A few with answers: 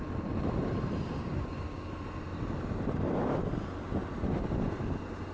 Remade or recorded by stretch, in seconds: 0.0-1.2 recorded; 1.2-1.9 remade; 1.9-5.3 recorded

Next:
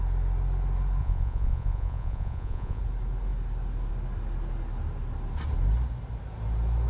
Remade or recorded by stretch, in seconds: 0.0-1.0 recorded; 1.0-2.8 remade; 2.8-6.9 recorded